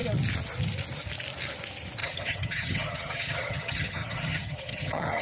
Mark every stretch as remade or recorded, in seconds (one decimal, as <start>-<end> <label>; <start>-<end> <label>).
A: 0.0-2.0 recorded; 2.0-5.2 remade